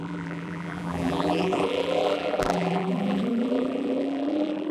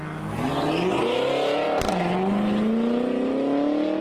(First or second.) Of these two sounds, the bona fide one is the second